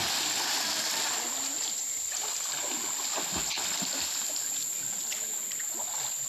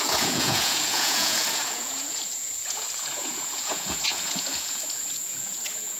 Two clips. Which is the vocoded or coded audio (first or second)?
second